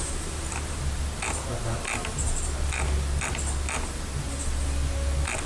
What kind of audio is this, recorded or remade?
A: recorded